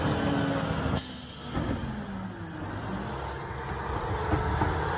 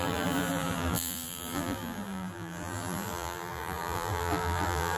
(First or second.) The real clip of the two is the first